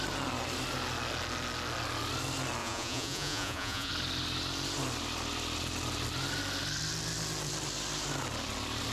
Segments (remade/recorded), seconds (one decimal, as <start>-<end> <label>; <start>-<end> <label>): 0.0-2.6 recorded; 2.6-3.9 remade; 3.9-8.9 recorded